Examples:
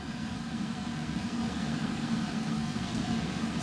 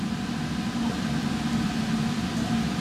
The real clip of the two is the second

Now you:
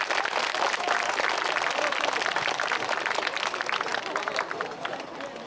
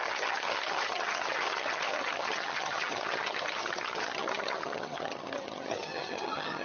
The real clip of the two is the first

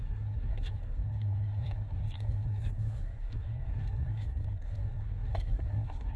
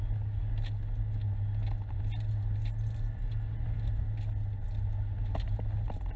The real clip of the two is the second